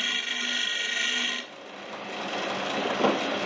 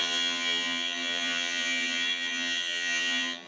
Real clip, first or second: first